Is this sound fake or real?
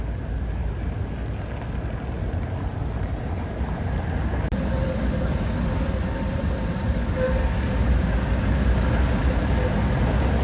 real